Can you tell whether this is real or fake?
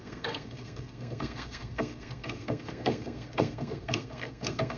fake